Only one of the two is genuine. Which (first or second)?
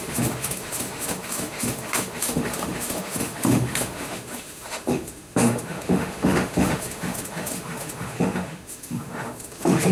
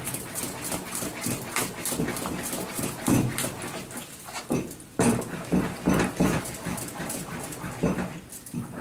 second